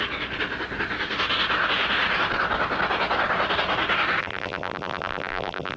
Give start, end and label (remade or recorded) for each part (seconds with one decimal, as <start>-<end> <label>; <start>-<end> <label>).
0.0-4.2 recorded; 4.2-5.8 remade